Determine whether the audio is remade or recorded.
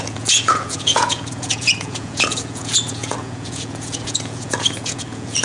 remade